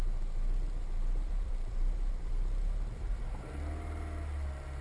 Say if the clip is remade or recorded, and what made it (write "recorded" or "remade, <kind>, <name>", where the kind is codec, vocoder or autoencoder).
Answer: remade, vocoder, BigVGAN v2